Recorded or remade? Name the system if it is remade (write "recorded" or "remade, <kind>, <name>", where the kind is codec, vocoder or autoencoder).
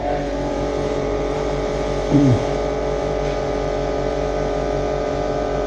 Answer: remade, vocoder, BigVGAN v2